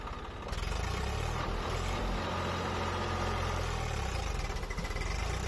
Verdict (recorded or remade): recorded